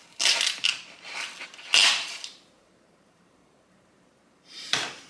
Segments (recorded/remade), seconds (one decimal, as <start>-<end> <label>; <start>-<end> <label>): 0.0-1.8 recorded; 1.8-5.1 remade